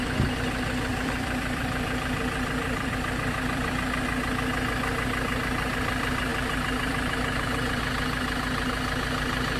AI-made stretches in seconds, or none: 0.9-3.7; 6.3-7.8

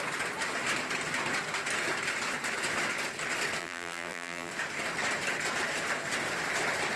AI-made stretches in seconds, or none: 3.6-4.5